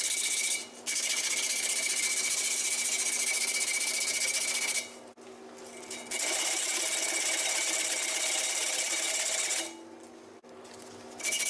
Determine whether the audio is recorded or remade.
recorded